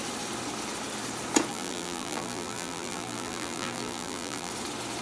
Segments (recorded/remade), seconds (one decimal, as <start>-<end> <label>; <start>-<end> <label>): 0.0-1.5 recorded; 1.5-4.5 remade; 4.5-5.0 recorded